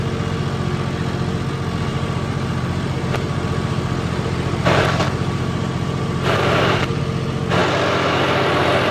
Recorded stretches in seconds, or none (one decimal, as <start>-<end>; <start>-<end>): 0.0-1.9; 7.0-8.9